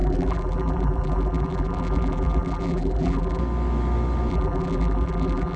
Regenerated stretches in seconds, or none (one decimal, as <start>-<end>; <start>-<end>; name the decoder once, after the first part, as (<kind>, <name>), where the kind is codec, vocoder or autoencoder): 0.0-3.4 (vocoder, BigVGAN v2); 4.3-5.6